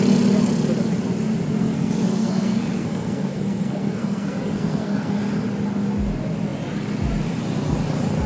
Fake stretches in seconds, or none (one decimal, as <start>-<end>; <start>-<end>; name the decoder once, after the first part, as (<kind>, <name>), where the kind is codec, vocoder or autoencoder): 1.6-5.2 (codec, SNAC)